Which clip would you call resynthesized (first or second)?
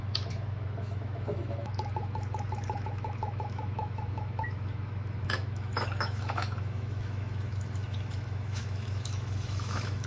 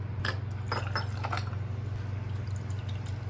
first